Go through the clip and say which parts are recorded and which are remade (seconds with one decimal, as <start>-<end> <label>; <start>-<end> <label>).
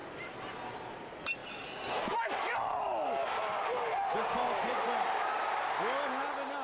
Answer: 0.0-6.6 recorded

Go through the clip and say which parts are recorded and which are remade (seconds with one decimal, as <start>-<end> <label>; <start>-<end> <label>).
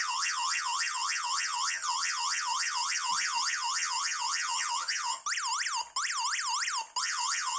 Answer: 0.0-5.2 remade; 5.2-7.0 recorded; 7.0-7.6 remade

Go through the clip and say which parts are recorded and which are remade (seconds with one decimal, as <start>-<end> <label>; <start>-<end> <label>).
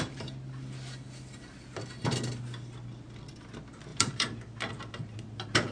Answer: 0.0-3.9 recorded; 3.9-4.7 remade; 4.7-5.7 recorded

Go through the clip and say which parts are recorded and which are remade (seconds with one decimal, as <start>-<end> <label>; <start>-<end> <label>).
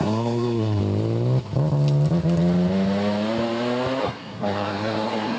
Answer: 0.0-0.8 remade; 0.8-4.0 recorded; 4.0-5.4 remade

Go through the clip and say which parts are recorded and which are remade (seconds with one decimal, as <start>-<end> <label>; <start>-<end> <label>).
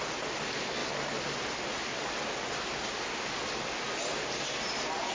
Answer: 0.0-5.1 recorded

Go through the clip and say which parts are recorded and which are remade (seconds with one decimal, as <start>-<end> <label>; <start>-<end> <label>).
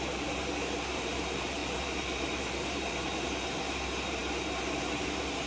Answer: 0.0-5.5 remade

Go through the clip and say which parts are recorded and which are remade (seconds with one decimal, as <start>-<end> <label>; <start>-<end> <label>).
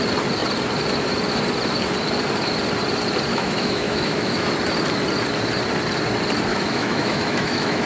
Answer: 0.0-3.3 recorded; 3.3-4.5 remade; 4.5-6.5 recorded; 6.5-7.9 remade